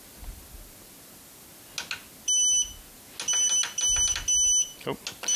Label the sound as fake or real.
real